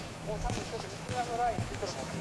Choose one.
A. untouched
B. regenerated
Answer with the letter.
B